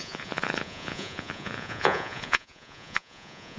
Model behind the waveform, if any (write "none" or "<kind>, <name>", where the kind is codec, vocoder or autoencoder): vocoder, Vocos